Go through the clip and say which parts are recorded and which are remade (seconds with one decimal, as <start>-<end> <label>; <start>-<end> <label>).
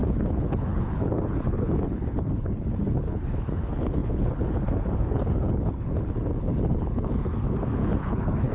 0.0-8.5 remade